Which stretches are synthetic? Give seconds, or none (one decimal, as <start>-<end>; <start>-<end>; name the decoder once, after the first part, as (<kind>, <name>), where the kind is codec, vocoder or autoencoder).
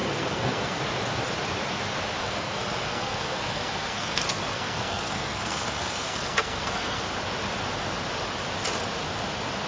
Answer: 0.0-0.8 (codec, SNAC); 2.2-7.0